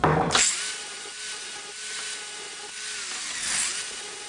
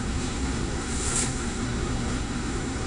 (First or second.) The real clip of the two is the first